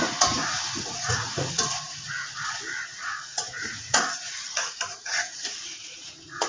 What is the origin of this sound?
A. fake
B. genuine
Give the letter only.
A